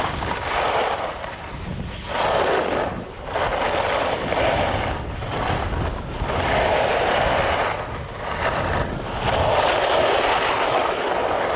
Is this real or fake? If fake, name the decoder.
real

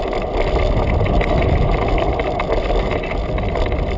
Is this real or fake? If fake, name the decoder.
real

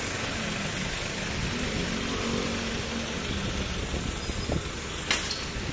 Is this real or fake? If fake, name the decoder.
real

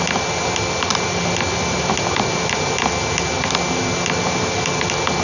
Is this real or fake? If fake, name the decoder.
real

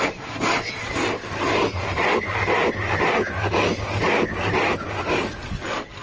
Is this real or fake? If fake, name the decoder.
real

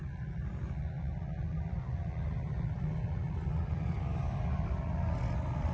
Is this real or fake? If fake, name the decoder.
real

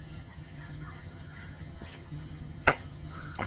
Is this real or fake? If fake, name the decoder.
fake, vocoder, HiFi-GAN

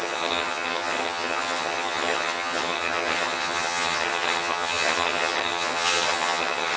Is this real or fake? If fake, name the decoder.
fake, vocoder, HiFi-GAN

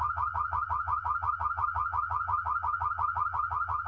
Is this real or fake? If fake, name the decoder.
fake, vocoder, HiFi-GAN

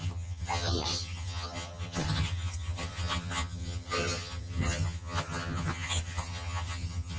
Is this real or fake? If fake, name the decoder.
fake, vocoder, HiFi-GAN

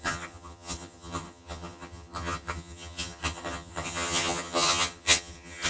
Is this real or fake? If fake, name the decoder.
fake, vocoder, HiFi-GAN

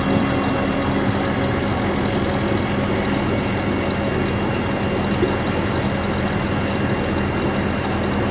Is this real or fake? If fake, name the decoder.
real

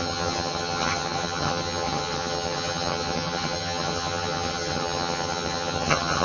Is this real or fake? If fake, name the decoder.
fake, vocoder, HiFi-GAN